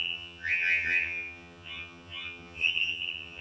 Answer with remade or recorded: remade